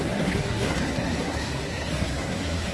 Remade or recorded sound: remade